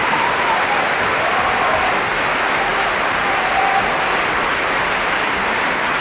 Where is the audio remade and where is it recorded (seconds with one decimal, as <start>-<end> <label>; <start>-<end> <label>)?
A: 0.0-6.0 recorded

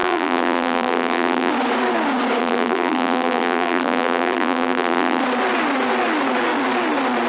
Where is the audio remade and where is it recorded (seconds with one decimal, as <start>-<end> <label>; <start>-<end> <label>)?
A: 0.0-1.5 remade; 1.5-2.4 recorded; 2.4-5.2 remade; 5.2-7.3 recorded

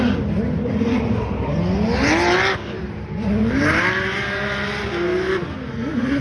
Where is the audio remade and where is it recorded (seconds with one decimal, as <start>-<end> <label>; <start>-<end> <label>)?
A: 0.0-3.4 recorded; 3.4-4.8 remade; 4.8-6.2 recorded

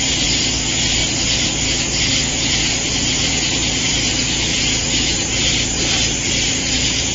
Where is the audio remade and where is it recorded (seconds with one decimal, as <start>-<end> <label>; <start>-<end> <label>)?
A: 0.0-1.0 remade; 1.0-2.0 recorded; 2.0-4.1 remade; 4.1-6.5 recorded; 6.5-7.1 remade